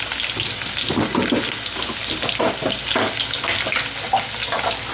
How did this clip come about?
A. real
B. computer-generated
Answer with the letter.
A